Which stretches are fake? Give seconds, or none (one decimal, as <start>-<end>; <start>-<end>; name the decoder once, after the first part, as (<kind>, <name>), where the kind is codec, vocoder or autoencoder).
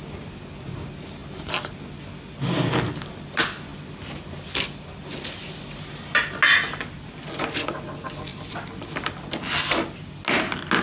8.3-9.1 (vocoder, BigVGAN v2)